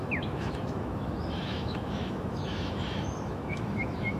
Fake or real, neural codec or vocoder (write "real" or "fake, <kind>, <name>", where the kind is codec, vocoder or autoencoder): fake, autoencoder, DAC-VAE